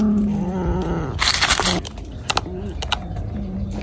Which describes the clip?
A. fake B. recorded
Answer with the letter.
B